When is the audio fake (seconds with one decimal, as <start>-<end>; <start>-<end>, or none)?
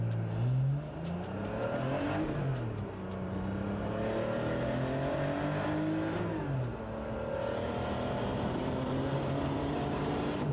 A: 8.3-10.5